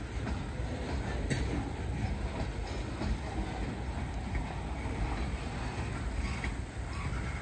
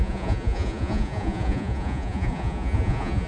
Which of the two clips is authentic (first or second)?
first